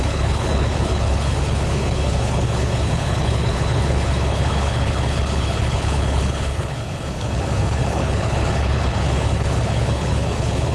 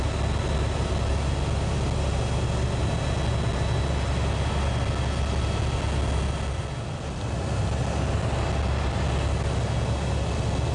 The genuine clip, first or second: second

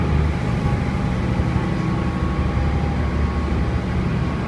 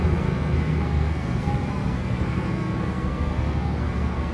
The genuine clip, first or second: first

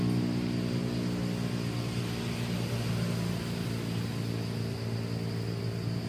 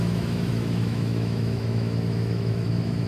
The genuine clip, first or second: first